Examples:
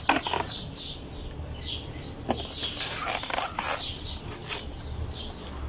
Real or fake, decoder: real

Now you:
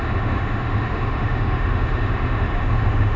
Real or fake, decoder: fake, autoencoder, DAC-VAE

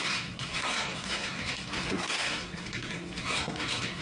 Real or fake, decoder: fake, codec, SNAC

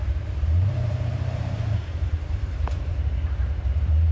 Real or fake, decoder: fake, vocoder, BigVGAN v2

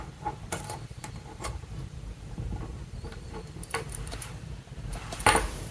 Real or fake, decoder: fake, vocoder, BigVGAN v2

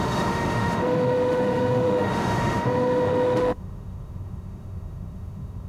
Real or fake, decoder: fake, autoencoder, DAC-VAE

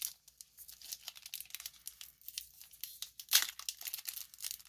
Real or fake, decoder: real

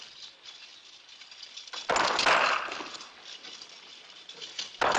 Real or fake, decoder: real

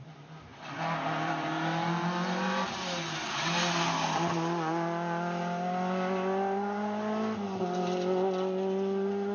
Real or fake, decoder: real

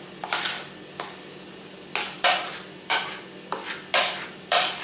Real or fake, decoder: real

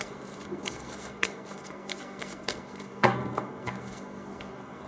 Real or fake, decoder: fake, codec, SNAC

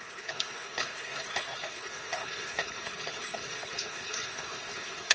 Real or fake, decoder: fake, codec, HILCodec